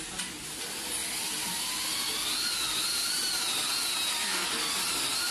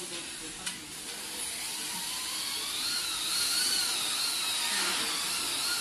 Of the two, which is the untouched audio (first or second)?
first